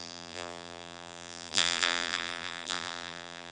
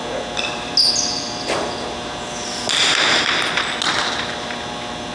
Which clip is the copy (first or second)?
first